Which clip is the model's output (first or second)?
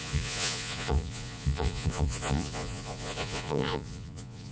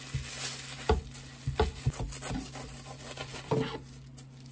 first